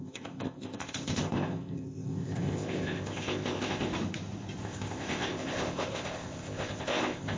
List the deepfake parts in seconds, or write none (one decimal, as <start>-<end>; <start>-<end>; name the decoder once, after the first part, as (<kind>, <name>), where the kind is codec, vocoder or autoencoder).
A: 0.0-3.9 (codec, ZipCodec); 4.6-7.4